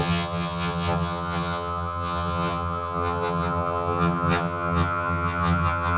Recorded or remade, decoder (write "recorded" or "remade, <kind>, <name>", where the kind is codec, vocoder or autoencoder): remade, vocoder, HiFi-GAN